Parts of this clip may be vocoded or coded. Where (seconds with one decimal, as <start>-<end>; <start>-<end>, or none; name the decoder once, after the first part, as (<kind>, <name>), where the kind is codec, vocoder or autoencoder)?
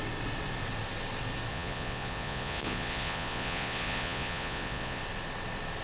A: 1.5-5.0 (vocoder, Vocos)